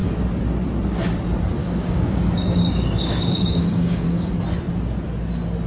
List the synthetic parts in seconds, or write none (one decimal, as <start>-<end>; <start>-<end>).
1.6-4.3